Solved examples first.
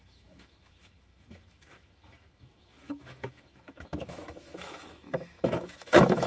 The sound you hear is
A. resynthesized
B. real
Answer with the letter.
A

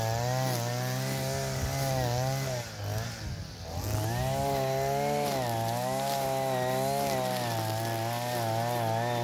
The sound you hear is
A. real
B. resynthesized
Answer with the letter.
A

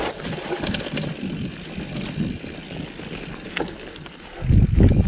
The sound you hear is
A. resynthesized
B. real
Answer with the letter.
B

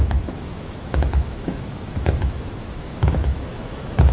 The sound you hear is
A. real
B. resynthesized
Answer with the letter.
B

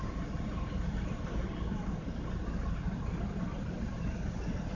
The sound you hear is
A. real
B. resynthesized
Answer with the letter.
A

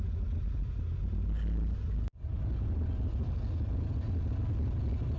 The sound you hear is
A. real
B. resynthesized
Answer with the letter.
A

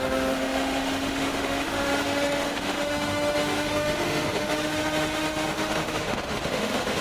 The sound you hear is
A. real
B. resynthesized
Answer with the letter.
B